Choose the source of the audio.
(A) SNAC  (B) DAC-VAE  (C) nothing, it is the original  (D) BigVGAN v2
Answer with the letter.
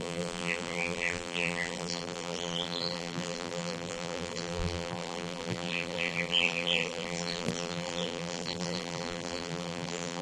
D